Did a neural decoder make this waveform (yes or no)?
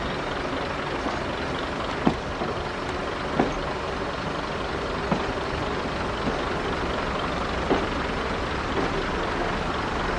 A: no